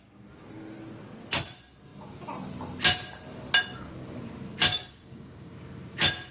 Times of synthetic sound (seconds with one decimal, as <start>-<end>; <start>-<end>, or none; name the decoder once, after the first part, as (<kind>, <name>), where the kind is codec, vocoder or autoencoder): 4.7-5.6 (codec, DAC)